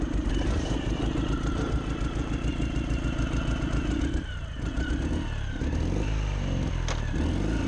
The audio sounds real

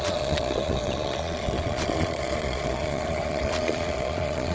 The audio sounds fake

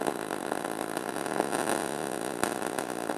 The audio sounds real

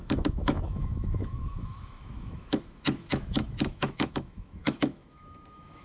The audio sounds fake